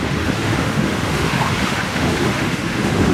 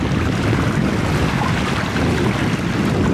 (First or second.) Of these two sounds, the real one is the second